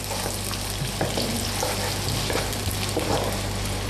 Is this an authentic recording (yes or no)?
yes